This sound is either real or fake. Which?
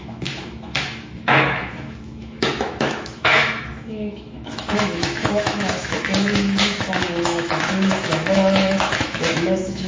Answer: fake